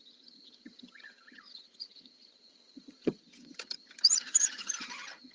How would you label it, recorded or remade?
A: remade